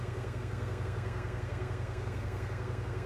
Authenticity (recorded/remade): remade